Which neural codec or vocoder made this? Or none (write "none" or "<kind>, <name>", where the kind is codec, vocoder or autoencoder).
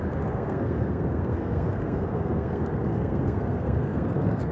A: codec, SNAC